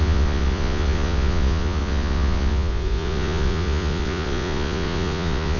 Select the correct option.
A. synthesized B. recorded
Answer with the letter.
A